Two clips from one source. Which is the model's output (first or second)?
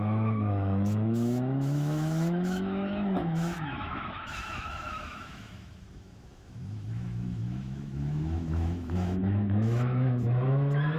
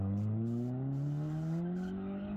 first